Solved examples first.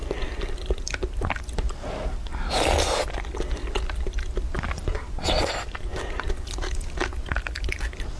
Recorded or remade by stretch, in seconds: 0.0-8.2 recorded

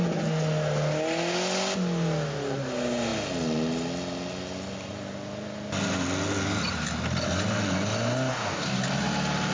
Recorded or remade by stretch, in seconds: 0.0-8.3 recorded; 8.3-8.8 remade; 8.8-9.5 recorded

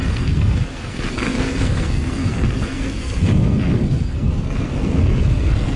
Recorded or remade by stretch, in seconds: 0.0-5.8 remade

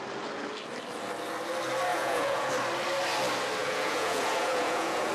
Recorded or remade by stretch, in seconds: 0.0-1.9 recorded; 1.9-2.5 remade; 2.5-3.6 recorded; 3.6-5.1 remade